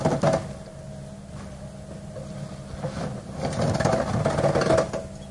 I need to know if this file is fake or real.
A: real